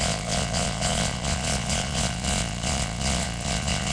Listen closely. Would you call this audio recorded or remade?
remade